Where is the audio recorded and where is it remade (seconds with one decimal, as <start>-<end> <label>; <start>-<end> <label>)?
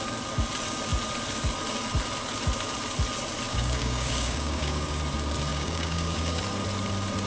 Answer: 0.0-3.5 recorded; 3.5-5.0 remade; 5.0-5.5 recorded; 5.5-6.4 remade; 6.4-7.3 recorded